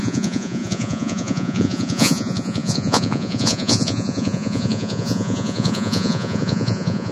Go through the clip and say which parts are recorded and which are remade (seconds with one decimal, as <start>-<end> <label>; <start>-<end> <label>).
0.0-7.1 remade